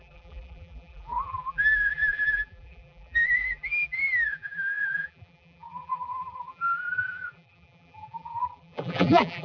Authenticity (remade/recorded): remade